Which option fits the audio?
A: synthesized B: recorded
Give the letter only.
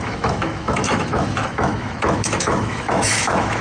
A